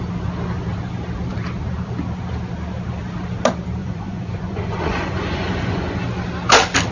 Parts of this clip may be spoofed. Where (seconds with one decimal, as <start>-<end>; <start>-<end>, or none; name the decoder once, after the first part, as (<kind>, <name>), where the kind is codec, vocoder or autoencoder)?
3.8-6.0 (vocoder, Vocos)